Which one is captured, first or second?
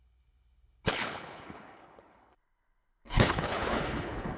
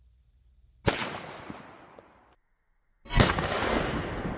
second